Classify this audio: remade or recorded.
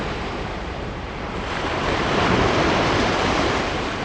remade